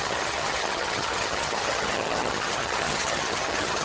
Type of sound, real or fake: fake